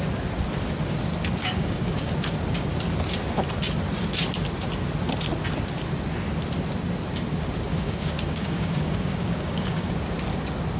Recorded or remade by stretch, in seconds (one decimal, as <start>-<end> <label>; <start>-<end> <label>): 0.0-1.4 recorded; 1.4-2.1 remade; 2.1-7.7 recorded; 7.7-9.9 remade; 9.9-10.8 recorded